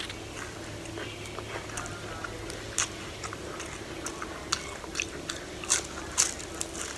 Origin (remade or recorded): recorded